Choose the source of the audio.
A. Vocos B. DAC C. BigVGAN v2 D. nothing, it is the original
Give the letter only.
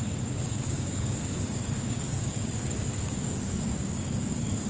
B